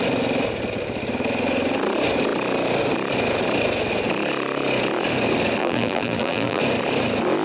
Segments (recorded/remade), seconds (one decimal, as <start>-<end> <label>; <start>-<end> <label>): 0.0-5.6 recorded; 5.6-6.6 remade; 6.6-7.4 recorded